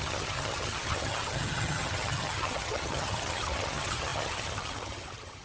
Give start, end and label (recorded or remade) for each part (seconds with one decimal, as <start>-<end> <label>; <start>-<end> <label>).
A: 0.0-5.4 remade